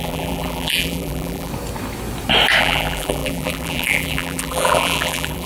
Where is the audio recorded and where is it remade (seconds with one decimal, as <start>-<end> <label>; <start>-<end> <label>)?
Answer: 0.0-1.5 remade; 1.5-2.6 recorded; 2.6-5.5 remade